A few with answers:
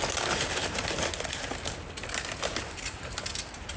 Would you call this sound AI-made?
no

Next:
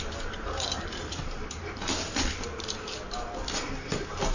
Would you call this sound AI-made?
yes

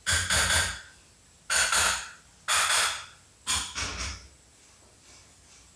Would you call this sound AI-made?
no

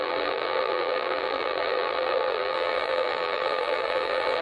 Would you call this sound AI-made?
yes